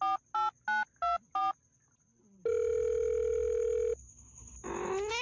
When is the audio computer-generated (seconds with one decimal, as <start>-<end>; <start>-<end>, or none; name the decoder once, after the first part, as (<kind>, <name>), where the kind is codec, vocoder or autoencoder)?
none

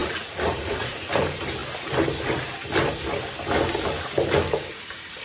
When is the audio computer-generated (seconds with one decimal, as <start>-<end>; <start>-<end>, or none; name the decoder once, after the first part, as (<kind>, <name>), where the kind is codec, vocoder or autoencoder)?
0.0-1.0 (vocoder, Vocos)

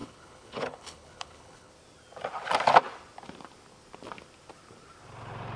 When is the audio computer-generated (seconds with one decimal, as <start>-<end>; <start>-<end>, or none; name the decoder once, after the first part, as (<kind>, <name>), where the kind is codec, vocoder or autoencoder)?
0.0-1.7 (codec, HILCodec)

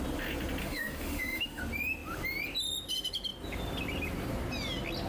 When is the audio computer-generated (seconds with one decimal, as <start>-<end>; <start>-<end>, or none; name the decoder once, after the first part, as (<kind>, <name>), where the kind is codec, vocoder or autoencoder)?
0.6-1.6 (autoencoder, DAC-VAE)

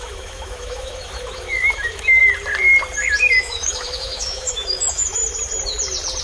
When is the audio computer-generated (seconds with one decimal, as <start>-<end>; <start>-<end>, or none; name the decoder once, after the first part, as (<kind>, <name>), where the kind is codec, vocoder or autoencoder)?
0.0-2.2 (autoencoder, DAC-VAE); 3.4-5.2

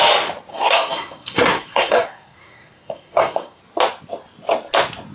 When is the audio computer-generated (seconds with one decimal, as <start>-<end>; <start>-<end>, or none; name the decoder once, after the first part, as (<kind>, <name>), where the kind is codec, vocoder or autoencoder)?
0.5-3.6 (codec, SNAC)